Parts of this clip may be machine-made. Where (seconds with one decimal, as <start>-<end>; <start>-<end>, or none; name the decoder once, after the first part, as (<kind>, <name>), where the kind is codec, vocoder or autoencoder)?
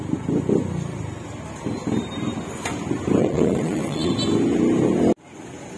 3.2-4.1 (vocoder, Vocos)